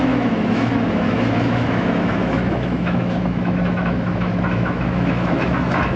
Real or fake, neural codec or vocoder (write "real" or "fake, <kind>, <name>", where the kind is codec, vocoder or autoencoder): fake, autoencoder, DAC-VAE